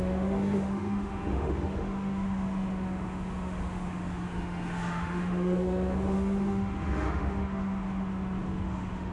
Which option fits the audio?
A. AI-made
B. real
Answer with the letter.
A